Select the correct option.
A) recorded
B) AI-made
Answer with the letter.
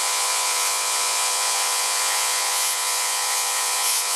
B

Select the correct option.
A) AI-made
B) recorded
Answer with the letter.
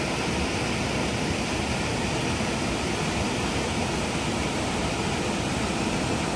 B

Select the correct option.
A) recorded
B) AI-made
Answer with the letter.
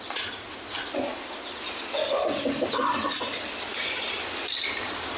A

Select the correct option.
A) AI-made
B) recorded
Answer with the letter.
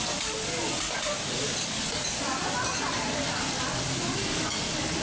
B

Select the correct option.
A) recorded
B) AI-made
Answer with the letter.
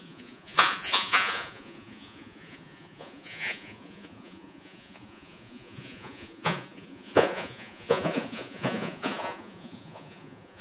B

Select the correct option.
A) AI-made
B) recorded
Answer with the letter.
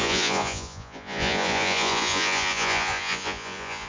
A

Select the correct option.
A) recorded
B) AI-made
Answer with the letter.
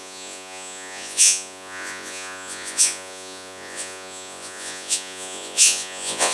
B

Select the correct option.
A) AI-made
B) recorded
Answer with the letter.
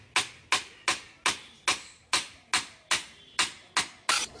B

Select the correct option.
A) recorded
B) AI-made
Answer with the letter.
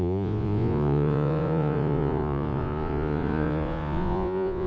B